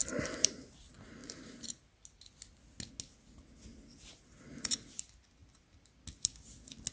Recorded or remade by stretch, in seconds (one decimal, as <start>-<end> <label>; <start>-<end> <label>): 0.0-0.5 remade; 0.5-1.2 recorded; 1.2-1.8 remade; 1.8-6.9 recorded